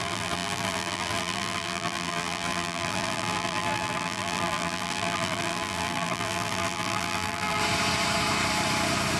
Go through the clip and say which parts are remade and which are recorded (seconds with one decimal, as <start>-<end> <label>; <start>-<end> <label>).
0.0-7.6 remade; 7.6-9.2 recorded